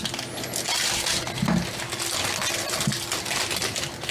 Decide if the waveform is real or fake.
real